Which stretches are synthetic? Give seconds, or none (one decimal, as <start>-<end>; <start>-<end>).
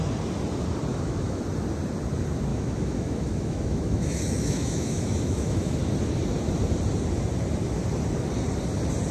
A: 0.9-1.4; 2.5-5.8